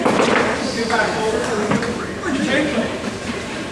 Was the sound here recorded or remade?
remade